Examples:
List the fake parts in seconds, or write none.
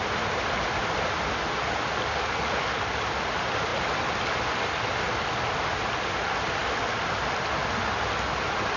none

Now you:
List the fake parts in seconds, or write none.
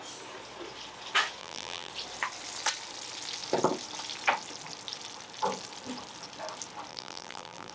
1.4-1.9; 6.9-7.7